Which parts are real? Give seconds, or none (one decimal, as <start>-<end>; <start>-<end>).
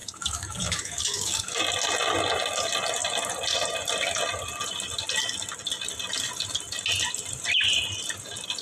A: 1.6-8.6